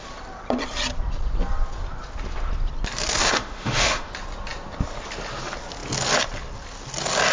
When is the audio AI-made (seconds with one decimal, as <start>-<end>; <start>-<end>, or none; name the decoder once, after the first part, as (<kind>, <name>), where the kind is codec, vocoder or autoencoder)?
3.2-4.1 (autoencoder, DAC-VAE)